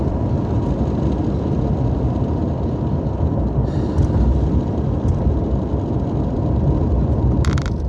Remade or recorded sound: remade